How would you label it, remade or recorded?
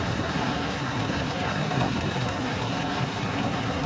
remade